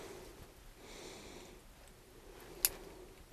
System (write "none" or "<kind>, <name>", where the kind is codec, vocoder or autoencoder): none